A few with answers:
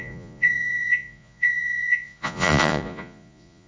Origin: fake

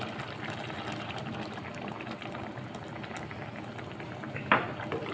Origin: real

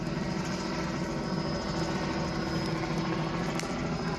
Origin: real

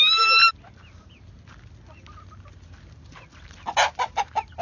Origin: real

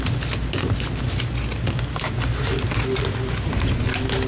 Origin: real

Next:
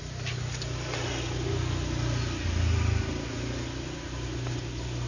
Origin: real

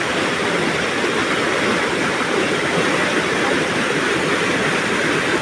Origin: real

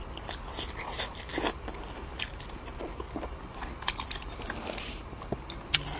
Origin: real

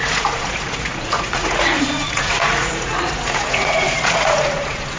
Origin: fake